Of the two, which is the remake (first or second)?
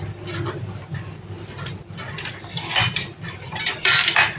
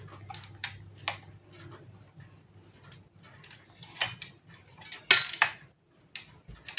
first